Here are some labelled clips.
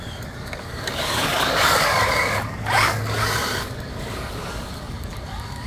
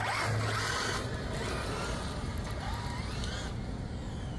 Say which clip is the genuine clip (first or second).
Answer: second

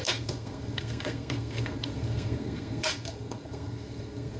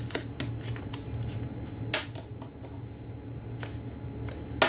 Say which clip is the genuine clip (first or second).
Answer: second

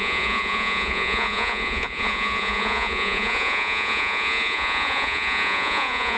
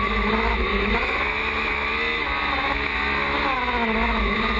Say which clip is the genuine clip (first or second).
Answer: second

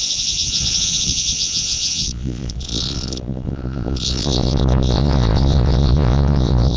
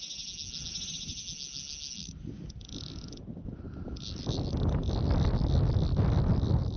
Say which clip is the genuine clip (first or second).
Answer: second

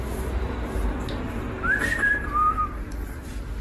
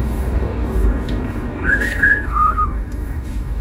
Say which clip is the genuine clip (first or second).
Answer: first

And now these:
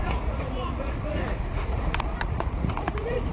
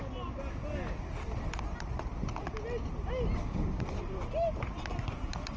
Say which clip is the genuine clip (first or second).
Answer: second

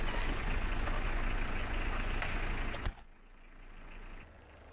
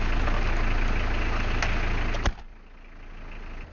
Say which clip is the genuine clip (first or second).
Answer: second